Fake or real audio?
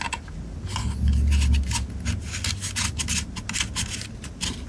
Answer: real